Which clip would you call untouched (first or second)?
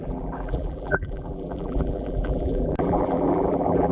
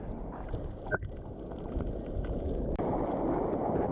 second